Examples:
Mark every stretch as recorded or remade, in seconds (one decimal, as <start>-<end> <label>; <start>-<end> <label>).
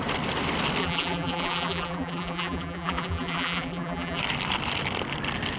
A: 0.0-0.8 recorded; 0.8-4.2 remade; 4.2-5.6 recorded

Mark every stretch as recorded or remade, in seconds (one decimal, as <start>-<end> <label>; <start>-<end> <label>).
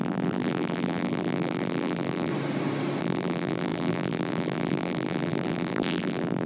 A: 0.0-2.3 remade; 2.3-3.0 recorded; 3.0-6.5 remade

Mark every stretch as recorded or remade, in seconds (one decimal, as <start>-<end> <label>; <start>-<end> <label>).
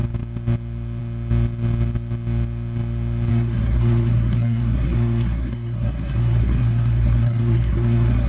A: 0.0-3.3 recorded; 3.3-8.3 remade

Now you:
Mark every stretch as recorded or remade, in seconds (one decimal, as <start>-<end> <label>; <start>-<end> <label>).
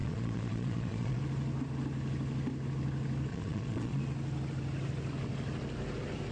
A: 0.0-1.2 remade; 1.2-3.3 recorded; 3.3-4.0 remade; 4.0-6.3 recorded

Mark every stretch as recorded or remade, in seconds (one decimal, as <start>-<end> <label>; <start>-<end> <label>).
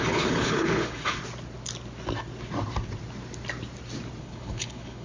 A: 0.0-1.2 remade; 1.2-4.2 recorded; 4.2-5.0 remade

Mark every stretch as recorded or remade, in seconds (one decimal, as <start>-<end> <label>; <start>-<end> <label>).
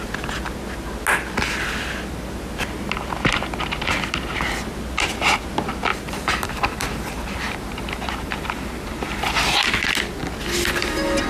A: 0.0-5.9 recorded; 5.9-8.9 remade; 8.9-11.3 recorded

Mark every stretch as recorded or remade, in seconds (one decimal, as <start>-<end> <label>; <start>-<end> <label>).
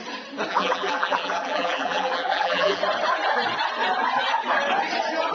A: 0.0-0.5 recorded; 0.5-2.8 remade; 2.8-5.3 recorded